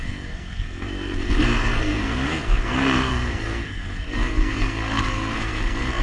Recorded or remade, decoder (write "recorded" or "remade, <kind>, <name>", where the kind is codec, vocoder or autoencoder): remade, codec, SNAC